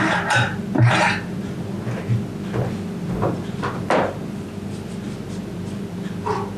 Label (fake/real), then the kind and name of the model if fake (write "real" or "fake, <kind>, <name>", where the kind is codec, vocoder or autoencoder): real